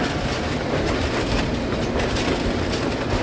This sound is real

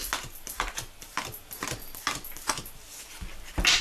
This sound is real